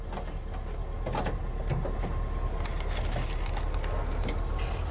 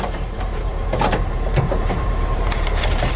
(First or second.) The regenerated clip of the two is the second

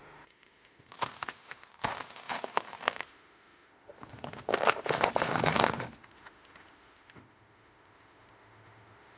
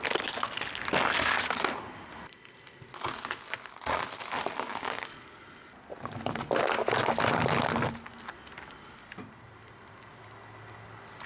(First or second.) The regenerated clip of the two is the first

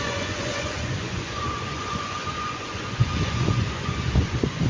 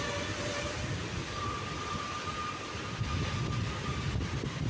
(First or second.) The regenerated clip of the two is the first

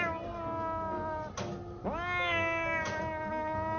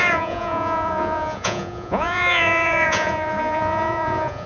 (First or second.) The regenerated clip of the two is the second